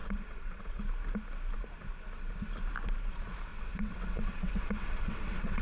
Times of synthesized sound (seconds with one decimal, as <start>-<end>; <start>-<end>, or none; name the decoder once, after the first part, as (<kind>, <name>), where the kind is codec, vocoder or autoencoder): 0.0-0.8 (vocoder, WaveNeXt); 3.5-5.6

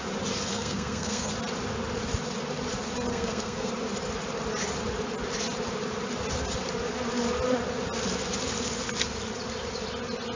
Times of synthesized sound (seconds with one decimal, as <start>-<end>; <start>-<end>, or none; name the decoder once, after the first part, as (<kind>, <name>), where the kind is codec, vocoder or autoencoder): 0.5-1.3 (codec, SNAC); 3.1-3.7

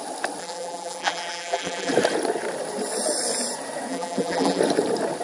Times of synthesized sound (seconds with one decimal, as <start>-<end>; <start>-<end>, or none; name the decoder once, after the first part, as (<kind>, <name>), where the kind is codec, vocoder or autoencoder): 0.4-1.9 (vocoder, BigVGAN v2); 3.9-4.6

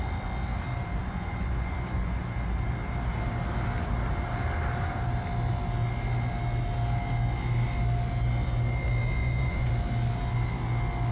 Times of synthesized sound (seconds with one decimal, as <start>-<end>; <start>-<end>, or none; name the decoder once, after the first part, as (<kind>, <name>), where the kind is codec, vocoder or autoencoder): 1.0-2.2 (vocoder, Vocos); 9.2-9.7

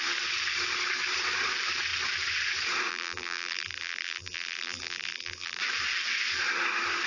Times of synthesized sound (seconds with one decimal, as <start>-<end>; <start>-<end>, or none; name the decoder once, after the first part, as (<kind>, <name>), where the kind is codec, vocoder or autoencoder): 2.9-5.6 (vocoder, BigVGAN v2)

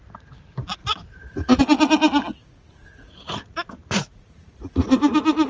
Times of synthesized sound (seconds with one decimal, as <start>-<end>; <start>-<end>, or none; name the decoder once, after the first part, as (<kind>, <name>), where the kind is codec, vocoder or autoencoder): 0.8-1.6 (vocoder, Vocos); 2.4-5.5

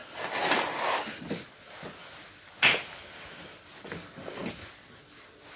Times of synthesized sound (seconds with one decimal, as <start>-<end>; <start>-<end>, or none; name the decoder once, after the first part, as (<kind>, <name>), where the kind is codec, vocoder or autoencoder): none